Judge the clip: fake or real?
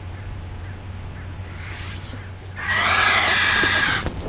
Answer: real